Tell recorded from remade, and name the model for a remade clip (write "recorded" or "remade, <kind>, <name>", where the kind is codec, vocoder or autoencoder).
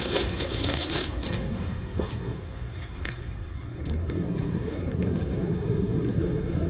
remade, codec, SNAC